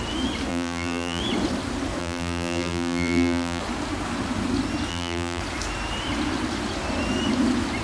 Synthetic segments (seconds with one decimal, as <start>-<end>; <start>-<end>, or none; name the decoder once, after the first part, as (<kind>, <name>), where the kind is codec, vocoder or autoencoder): 0.5-1.2 (vocoder, BigVGAN v2); 2.0-3.6; 4.9-5.4